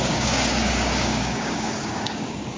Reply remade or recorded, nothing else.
remade